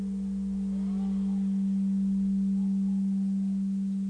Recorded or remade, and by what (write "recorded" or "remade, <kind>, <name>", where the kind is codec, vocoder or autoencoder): recorded